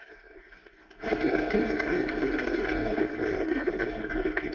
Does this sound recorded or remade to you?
remade